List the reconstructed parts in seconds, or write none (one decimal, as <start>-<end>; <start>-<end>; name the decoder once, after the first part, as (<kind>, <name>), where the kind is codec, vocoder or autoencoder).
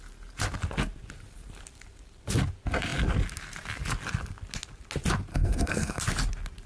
5.3-6.0 (codec, SNAC)